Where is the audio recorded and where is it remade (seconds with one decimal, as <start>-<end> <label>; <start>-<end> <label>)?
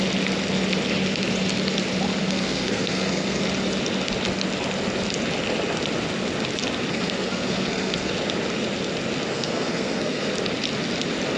0.0-2.2 recorded; 2.2-3.4 remade; 3.4-6.9 recorded; 6.9-8.1 remade; 8.1-9.3 recorded; 9.3-10.3 remade; 10.3-11.4 recorded